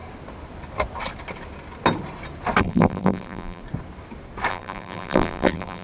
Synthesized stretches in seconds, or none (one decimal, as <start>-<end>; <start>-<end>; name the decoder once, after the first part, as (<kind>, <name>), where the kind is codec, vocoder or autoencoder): 2.6-3.6 (vocoder, BigVGAN v2); 4.5-5.8